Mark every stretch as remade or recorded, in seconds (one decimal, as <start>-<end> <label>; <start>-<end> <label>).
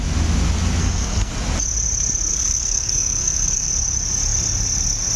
0.0-0.8 recorded; 0.8-1.3 remade; 1.3-2.3 recorded; 2.3-3.7 remade; 3.7-5.2 recorded